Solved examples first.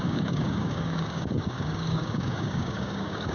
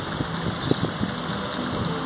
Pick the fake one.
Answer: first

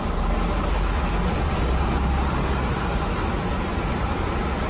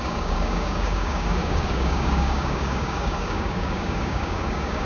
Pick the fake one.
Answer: second